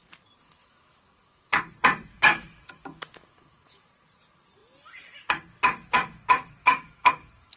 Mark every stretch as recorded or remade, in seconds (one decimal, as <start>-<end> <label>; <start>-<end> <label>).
0.0-0.6 recorded; 0.6-1.6 remade; 1.6-2.1 recorded; 2.1-3.9 remade; 3.9-6.6 recorded; 6.6-7.1 remade; 7.1-7.6 recorded